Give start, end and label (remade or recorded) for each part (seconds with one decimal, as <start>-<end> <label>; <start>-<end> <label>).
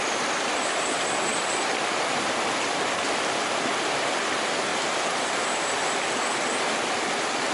0.0-4.7 recorded; 4.7-5.7 remade; 5.7-7.5 recorded